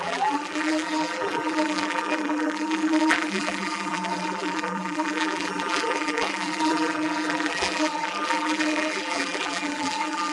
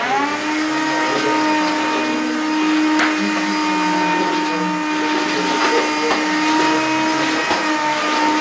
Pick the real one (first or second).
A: second